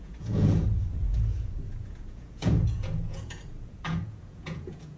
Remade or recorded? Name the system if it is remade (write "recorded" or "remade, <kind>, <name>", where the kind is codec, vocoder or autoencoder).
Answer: remade, vocoder, Vocos